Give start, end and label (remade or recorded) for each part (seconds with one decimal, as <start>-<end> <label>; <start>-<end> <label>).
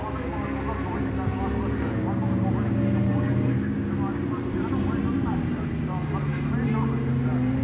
0.0-7.6 recorded